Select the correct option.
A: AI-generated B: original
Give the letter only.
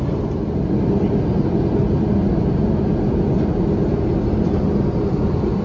B